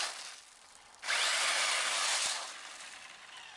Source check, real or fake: real